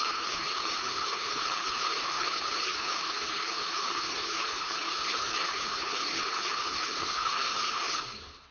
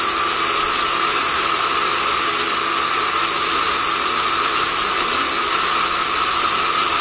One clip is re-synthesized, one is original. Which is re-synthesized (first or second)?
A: first